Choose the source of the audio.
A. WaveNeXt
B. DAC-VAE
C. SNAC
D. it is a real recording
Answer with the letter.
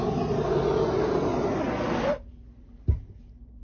D